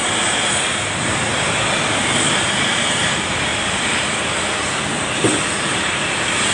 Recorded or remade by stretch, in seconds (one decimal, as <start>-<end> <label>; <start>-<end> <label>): 0.0-3.5 recorded; 3.5-5.1 remade; 5.1-6.5 recorded